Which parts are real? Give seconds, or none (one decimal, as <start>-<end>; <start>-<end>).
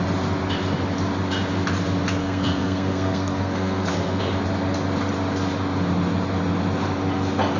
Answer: 0.0-2.2; 4.2-7.6